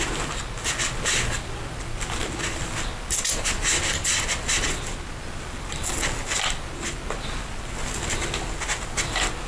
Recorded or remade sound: recorded